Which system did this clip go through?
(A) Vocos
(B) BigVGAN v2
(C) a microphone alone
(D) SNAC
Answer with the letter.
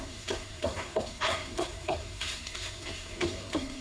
D